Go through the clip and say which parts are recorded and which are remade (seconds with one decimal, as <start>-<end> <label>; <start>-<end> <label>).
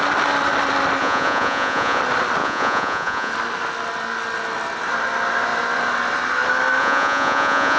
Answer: 0.0-1.0 recorded; 1.0-2.0 remade; 2.0-2.4 recorded; 2.4-3.3 remade; 3.3-6.8 recorded; 6.8-7.8 remade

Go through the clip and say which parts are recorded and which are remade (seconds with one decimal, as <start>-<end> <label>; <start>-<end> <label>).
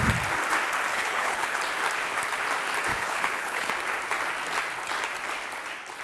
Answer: 0.0-0.9 recorded; 0.9-1.6 remade; 1.6-2.9 recorded; 2.9-3.7 remade; 3.7-6.0 recorded